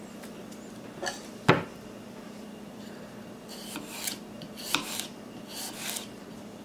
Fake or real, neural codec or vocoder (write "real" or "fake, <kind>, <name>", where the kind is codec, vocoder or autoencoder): fake, vocoder, BigVGAN v2